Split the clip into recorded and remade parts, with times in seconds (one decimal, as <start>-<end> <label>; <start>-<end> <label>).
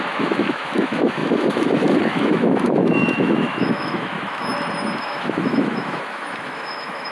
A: 0.0-4.5 remade; 4.5-5.0 recorded; 5.0-7.1 remade